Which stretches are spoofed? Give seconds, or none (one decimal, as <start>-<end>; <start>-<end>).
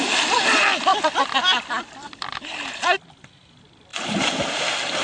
none